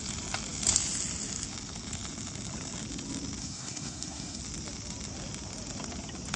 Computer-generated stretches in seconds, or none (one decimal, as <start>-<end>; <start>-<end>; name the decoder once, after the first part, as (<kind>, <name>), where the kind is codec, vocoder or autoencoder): 3.4-4.4 (codec, SNAC)